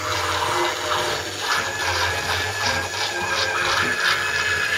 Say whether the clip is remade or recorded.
recorded